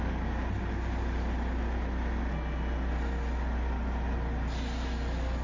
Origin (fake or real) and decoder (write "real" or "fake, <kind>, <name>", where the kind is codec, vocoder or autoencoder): real